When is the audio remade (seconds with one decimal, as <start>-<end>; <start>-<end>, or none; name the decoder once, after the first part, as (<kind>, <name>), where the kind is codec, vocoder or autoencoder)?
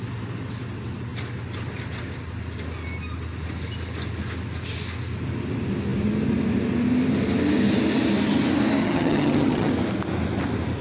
8.8-9.7 (vocoder, HiFi-GAN)